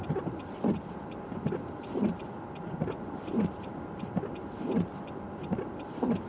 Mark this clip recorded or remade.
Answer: remade